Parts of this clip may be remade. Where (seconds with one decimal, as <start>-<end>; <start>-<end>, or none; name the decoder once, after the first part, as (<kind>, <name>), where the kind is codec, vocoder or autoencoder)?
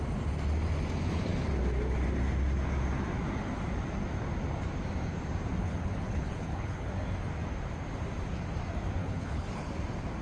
5.6-6.9 (codec, HILCodec); 9.0-9.7